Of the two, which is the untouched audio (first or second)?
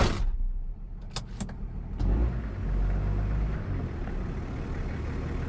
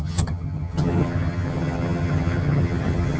first